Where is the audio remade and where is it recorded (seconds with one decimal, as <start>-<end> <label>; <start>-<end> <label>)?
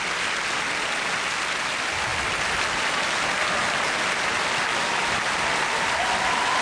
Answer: 0.0-6.6 recorded